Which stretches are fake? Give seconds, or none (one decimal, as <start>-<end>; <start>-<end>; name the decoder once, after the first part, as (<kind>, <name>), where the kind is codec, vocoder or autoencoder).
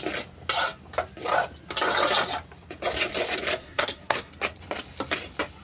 3.6-4.3 (codec, SNAC)